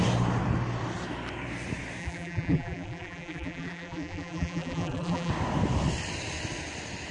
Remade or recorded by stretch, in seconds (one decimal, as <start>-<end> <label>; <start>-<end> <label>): 0.0-2.0 recorded; 2.0-5.3 remade; 5.3-7.1 recorded

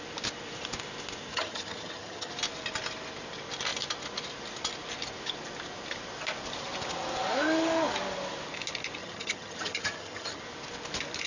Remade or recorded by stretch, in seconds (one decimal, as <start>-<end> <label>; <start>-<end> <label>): 0.0-1.3 recorded; 1.3-2.3 remade; 2.3-9.0 recorded; 9.0-10.4 remade; 10.4-11.3 recorded

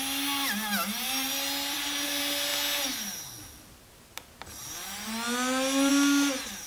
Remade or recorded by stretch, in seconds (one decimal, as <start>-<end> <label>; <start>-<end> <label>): 0.0-6.7 recorded

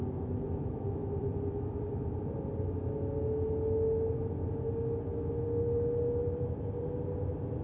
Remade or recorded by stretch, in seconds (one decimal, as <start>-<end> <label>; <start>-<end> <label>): 0.0-1.0 recorded; 1.0-2.7 remade; 2.7-6.2 recorded; 6.2-6.8 remade; 6.8-7.6 recorded

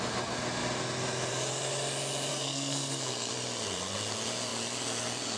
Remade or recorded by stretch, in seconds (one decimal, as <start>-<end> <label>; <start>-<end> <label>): 0.0-2.3 recorded; 2.3-3.3 remade; 3.3-5.4 recorded

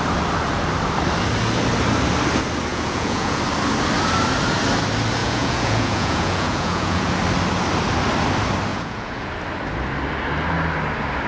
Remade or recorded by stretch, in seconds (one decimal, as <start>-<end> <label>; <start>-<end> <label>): 0.0-2.7 recorded; 2.7-3.4 remade; 3.4-5.2 recorded; 5.2-7.1 remade; 7.1-8.7 recorded; 8.7-9.3 remade; 9.3-11.3 recorded